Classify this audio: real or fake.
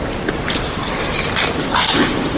real